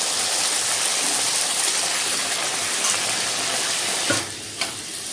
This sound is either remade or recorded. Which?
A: recorded